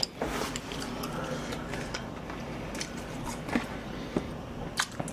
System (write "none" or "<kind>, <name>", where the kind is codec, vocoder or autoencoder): none